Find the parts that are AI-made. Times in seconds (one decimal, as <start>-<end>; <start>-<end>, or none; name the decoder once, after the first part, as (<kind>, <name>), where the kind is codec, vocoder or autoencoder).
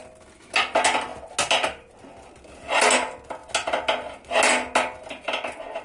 none